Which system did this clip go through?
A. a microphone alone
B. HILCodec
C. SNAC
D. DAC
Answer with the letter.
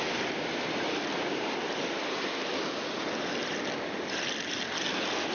A